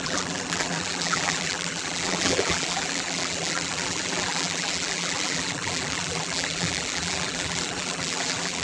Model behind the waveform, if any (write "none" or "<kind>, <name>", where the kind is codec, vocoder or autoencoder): vocoder, BigVGAN v2